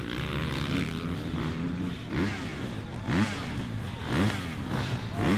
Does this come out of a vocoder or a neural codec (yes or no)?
no